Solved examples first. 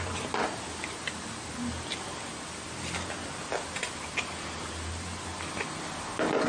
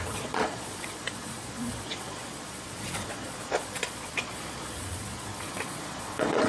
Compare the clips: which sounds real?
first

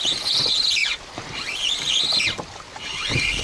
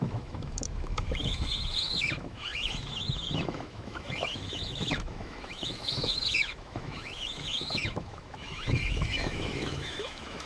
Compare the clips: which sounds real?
first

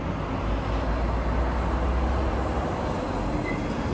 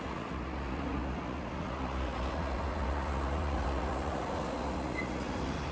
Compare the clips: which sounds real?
first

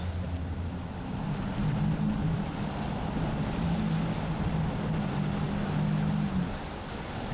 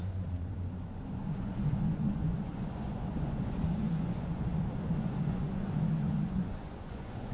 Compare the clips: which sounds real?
first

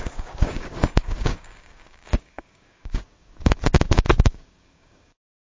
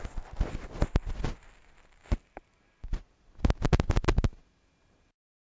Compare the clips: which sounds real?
second